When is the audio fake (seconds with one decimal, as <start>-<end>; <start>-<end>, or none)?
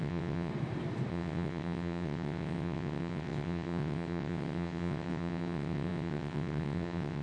0.0-0.5; 1.1-7.2